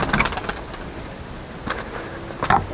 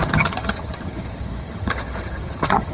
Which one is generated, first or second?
second